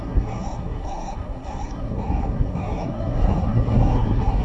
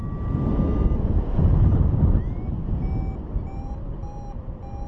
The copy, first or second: first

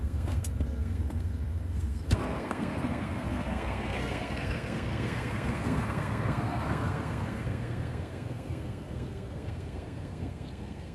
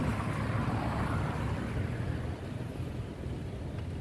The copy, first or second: first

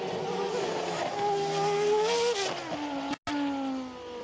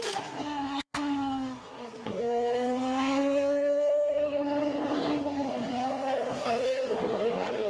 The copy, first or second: second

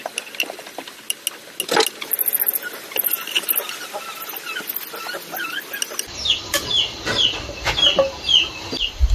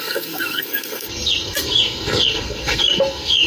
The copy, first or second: second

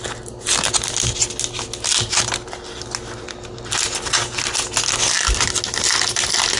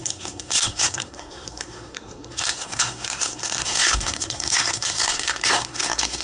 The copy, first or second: second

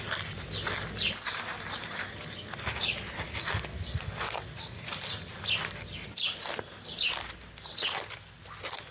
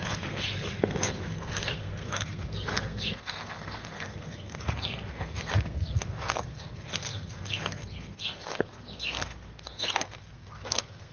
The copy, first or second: second